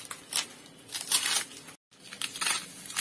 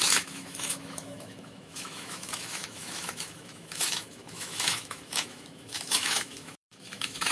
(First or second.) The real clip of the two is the first